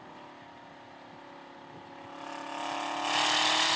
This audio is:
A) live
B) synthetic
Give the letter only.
A